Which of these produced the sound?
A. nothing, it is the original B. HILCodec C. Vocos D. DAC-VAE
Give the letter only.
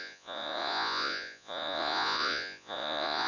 C